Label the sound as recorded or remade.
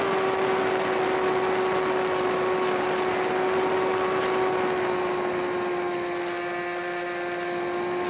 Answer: recorded